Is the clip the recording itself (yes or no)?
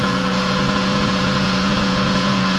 no